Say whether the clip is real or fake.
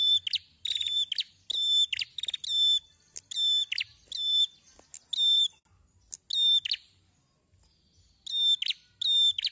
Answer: real